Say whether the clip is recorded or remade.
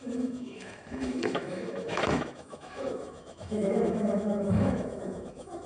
remade